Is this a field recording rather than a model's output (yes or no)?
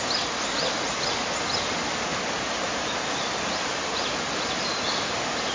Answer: yes